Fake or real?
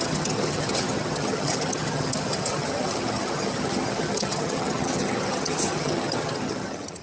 fake